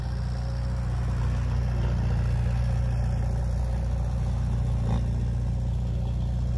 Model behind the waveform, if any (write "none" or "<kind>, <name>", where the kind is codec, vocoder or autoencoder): none